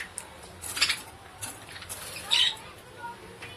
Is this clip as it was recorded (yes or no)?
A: no